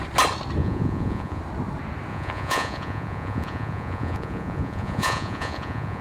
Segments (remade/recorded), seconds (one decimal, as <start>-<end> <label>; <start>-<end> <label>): 0.0-0.6 recorded; 0.6-1.4 remade; 1.4-2.1 recorded; 2.1-6.0 remade